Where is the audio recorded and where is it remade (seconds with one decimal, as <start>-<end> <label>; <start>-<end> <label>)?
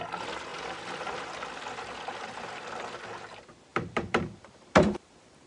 0.0-3.7 recorded; 3.7-5.5 remade